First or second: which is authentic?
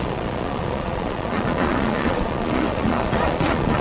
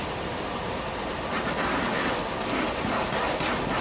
second